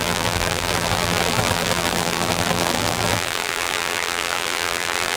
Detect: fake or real fake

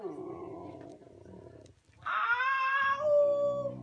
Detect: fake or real real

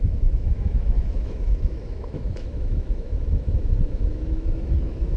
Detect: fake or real fake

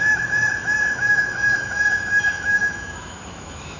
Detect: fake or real fake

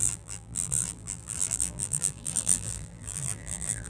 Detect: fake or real fake